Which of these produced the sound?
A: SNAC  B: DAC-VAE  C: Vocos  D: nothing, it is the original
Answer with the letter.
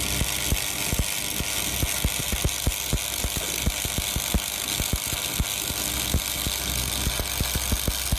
D